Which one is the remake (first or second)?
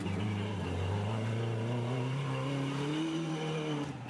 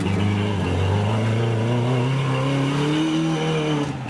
first